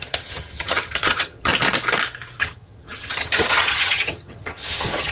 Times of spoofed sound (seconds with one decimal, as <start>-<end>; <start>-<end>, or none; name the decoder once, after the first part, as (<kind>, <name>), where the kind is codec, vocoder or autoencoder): 0.0-1.5 (vocoder, HiFi-GAN); 2.4-5.1